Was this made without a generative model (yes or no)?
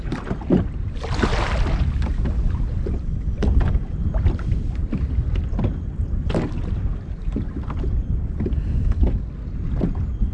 yes